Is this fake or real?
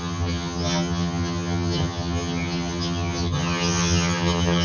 fake